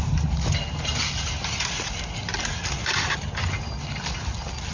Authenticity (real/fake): real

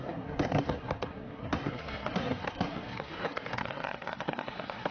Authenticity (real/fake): fake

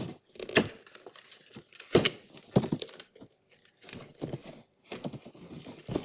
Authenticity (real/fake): real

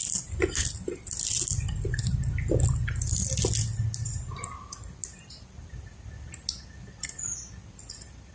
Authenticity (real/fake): real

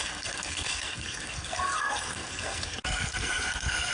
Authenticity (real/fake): fake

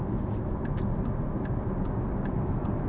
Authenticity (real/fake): real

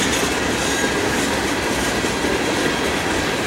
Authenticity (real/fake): real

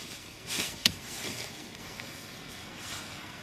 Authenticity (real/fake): fake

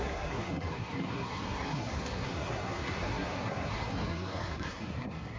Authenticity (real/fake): fake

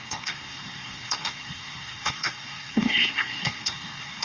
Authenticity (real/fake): fake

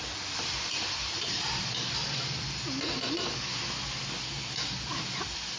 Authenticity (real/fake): real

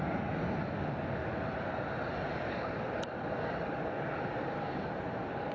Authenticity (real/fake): real